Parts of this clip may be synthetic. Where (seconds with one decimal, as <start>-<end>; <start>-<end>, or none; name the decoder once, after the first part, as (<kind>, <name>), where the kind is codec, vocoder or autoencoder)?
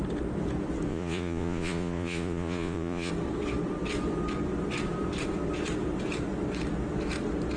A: 0.9-3.1 (vocoder, Vocos)